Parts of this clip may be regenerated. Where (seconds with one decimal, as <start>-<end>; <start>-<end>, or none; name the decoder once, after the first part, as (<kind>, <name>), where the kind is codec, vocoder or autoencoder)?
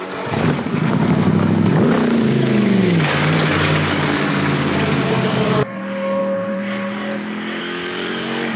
0.0-6.2 (codec, DAC); 7.6-8.6